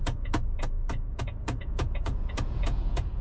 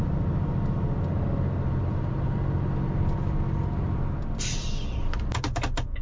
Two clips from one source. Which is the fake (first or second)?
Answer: first